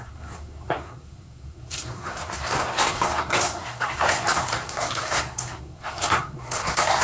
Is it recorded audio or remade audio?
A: remade